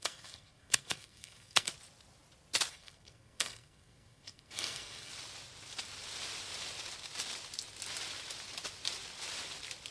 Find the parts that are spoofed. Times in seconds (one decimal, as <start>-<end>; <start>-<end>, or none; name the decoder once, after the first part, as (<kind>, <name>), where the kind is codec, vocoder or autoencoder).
0.0-1.7 (codec, SNAC); 2.7-5.1

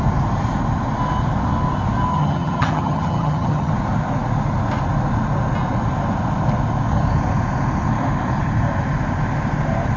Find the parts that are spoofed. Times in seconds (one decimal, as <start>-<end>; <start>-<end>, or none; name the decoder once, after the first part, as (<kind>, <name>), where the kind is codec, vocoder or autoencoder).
2.1-3.7 (vocoder, HiFi-GAN)

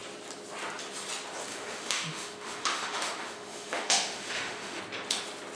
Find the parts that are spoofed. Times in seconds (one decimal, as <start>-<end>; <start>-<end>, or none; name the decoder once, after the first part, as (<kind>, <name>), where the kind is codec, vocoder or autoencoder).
1.5-4.8 (autoencoder, DAC-VAE)

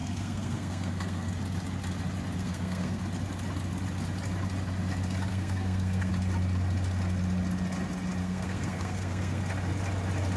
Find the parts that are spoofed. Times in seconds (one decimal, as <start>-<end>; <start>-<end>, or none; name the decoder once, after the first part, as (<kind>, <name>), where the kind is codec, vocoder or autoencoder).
0.0-1.3 (codec, SNAC); 2.4-3.0; 5.3-6.1; 8.2-9.4

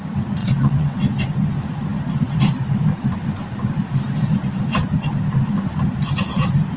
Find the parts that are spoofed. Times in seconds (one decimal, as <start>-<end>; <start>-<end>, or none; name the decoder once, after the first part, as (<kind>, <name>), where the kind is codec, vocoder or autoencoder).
0.4-1.0 (vocoder, WaveNeXt)

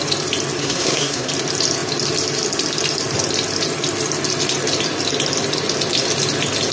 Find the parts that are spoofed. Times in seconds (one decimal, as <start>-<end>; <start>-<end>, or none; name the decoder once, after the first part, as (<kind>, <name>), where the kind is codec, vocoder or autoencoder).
0.6-1.3 (codec, SNAC)

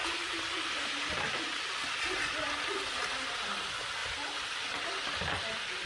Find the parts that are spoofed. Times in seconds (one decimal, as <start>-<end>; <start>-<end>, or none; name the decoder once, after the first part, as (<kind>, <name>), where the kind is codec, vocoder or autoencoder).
none

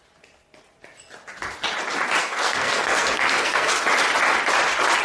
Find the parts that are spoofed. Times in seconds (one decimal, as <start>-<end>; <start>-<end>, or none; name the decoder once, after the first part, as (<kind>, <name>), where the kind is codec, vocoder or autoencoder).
2.2-3.8 (codec, SNAC)